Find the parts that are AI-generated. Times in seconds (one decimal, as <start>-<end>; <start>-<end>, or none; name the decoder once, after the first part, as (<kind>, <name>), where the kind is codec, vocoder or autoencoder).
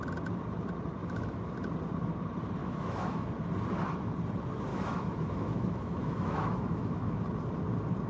1.0-1.5 (autoencoder, DAC-VAE); 2.6-3.3; 4.7-7.2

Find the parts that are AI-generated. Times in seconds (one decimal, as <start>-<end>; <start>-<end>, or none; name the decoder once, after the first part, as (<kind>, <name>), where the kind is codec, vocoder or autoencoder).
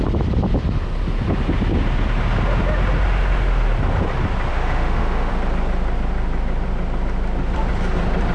4.5-5.3 (autoencoder, DAC-VAE)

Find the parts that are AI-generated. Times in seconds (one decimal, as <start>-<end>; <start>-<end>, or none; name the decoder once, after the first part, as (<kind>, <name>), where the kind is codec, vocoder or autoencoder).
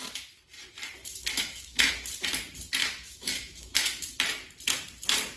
1.0-1.9 (autoencoder, DAC-VAE); 2.8-4.1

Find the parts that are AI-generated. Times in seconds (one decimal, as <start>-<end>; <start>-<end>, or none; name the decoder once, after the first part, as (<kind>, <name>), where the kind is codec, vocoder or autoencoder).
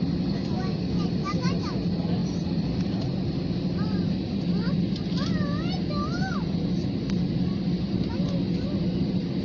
none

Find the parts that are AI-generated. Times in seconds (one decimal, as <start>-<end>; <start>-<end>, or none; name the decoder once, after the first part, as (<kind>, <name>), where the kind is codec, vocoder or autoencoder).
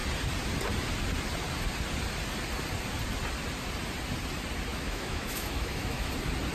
4.7-6.1 (autoencoder, DAC-VAE)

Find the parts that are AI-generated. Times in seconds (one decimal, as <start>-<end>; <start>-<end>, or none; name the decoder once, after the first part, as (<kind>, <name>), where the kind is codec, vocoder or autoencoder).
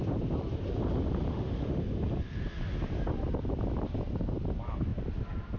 1.3-1.8 (autoencoder, DAC-VAE)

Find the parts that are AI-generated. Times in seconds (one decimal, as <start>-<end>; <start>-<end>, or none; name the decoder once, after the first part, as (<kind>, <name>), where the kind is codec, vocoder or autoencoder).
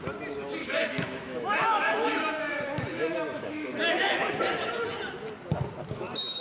0.6-4.3 (autoencoder, DAC-VAE)